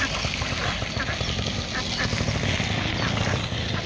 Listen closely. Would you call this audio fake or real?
real